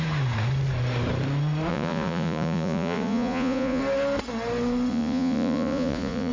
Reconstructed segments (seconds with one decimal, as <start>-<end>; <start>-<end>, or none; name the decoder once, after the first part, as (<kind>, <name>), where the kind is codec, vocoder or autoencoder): 1.7-3.8 (vocoder, Vocos); 4.9-6.3